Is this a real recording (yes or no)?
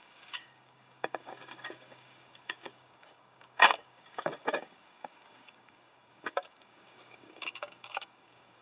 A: no